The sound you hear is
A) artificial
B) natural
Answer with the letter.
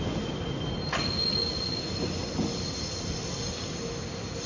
B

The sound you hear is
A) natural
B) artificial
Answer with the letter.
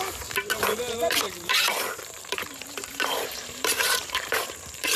B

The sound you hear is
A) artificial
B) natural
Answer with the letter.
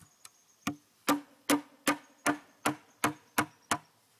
B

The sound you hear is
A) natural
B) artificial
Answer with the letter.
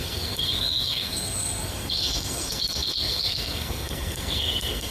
B